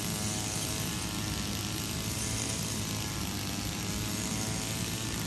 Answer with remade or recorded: recorded